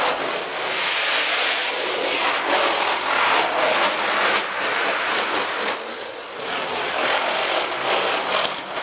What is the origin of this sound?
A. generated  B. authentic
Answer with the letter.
B